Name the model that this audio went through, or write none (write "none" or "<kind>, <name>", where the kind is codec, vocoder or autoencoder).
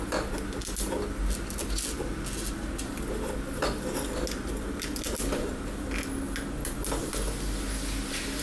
none